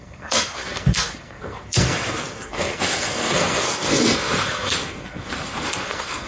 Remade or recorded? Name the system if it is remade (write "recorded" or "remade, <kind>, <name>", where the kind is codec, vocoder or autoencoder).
remade, codec, SNAC